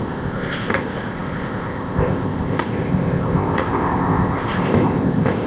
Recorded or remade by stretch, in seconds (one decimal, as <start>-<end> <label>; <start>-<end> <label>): 0.0-5.5 remade